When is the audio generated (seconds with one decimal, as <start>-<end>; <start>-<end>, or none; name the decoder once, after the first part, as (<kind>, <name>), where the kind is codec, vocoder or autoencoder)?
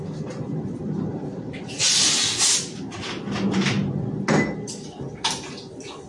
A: 1.1-2.1 (vocoder, BigVGAN v2)